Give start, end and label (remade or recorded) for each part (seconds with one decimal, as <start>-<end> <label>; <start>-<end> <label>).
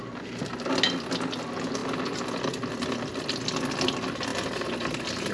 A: 0.0-5.3 recorded